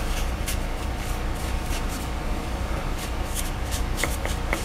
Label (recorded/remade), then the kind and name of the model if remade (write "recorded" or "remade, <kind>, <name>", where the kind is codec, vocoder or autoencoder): remade, codec, DAC